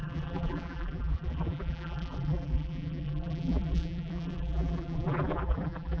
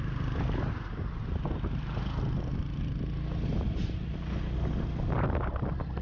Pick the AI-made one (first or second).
first